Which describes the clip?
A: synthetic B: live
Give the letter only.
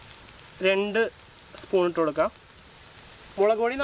B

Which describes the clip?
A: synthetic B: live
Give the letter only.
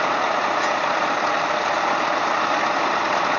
B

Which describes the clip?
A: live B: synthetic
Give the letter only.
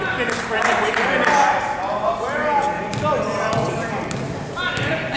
A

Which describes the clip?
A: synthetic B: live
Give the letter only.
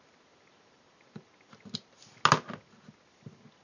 B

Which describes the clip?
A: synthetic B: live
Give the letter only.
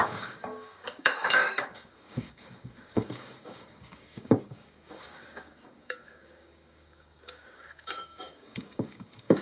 A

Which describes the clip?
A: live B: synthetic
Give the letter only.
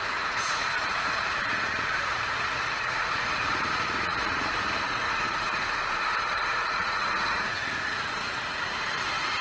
B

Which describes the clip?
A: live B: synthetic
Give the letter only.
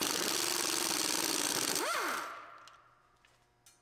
A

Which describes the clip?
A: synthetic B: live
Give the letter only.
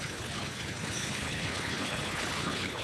A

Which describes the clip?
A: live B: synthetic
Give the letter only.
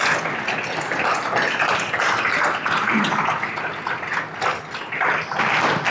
A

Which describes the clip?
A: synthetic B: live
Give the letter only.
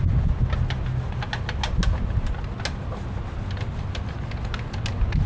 B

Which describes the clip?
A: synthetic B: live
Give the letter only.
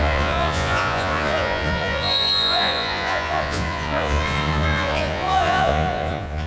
A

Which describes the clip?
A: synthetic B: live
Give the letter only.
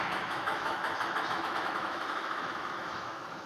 A